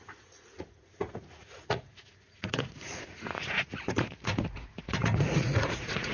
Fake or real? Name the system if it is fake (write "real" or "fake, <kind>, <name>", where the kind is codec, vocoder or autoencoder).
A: fake, vocoder, Vocos